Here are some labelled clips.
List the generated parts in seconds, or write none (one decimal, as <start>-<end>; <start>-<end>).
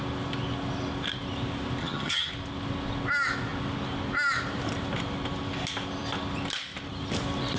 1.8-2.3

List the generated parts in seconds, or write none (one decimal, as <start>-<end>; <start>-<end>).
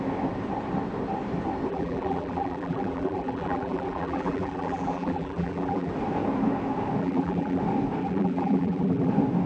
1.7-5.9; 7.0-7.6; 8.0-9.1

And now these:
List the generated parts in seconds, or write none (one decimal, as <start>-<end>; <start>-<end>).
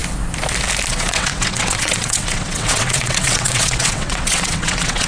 0.9-5.1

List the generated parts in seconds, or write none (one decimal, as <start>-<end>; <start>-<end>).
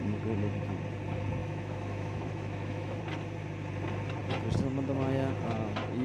1.4-3.0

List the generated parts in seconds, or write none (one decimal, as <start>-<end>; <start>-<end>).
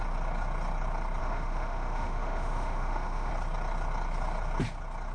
1.2-3.3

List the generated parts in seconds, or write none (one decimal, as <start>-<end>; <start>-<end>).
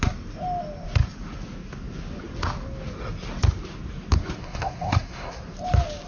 4.4-5.4